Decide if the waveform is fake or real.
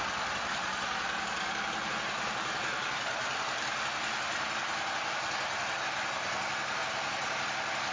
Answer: real